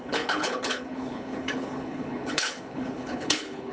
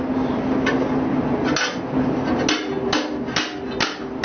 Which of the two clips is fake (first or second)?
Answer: first